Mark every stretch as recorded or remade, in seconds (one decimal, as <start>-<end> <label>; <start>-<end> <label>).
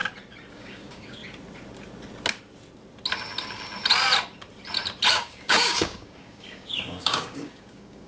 0.0-0.5 recorded; 0.5-1.2 remade; 1.2-5.1 recorded; 5.1-8.1 remade